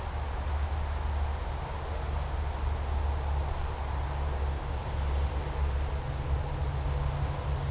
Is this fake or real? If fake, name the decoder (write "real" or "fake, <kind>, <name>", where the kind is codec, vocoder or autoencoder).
real